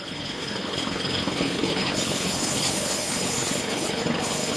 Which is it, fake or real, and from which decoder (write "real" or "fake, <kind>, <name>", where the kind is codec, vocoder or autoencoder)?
fake, codec, HILCodec